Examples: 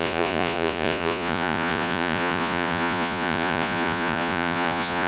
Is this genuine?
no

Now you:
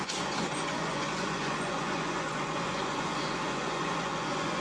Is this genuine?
no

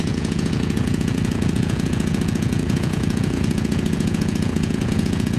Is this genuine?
no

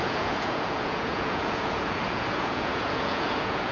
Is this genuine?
no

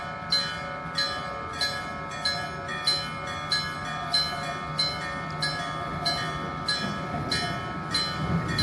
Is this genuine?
yes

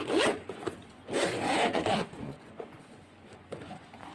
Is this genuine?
no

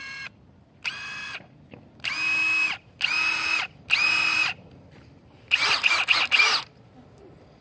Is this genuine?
yes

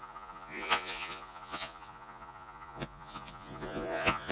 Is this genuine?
no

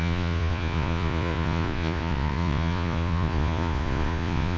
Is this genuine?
no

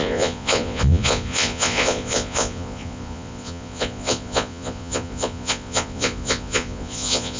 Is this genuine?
no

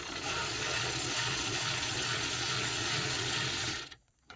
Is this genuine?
no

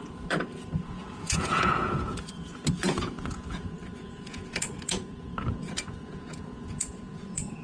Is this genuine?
no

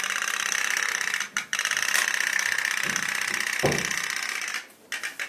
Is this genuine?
yes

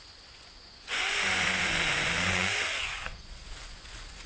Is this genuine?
no